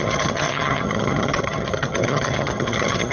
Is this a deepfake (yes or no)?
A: yes